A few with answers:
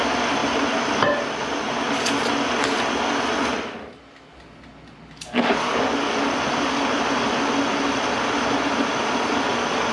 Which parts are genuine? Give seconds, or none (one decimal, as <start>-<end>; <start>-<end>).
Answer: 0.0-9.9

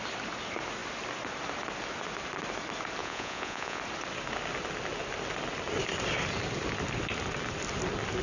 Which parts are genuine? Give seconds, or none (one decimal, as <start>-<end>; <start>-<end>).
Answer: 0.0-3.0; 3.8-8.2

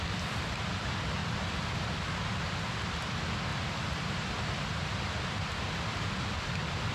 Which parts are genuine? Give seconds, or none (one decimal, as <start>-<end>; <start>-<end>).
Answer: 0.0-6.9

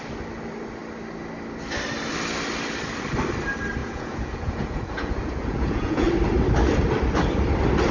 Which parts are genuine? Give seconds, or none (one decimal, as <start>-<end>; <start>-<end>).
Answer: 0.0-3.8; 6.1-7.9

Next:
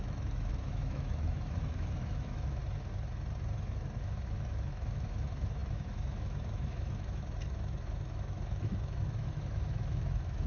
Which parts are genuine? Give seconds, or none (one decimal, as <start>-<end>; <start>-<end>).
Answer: 2.6-4.0

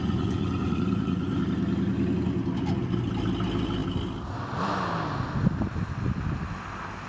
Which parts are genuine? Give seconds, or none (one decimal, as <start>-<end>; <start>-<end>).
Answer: 1.4-7.1

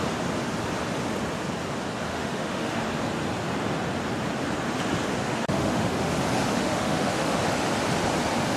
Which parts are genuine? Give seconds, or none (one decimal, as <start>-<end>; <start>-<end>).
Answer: 0.0-2.1; 2.8-5.2; 6.1-6.5; 7.4-8.6

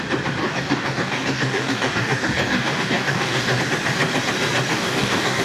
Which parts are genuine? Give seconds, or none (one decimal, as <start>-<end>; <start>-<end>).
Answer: 0.0-0.4; 3.6-4.7